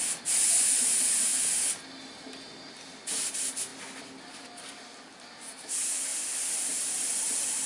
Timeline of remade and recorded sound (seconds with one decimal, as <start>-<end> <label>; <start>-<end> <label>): 0.0-1.3 remade; 1.3-2.0 recorded; 2.0-3.7 remade; 3.7-4.3 recorded; 4.3-6.1 remade; 6.1-6.6 recorded; 6.6-7.7 remade